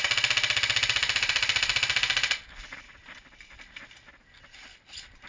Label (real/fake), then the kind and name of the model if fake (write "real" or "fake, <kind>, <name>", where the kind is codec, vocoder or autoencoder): real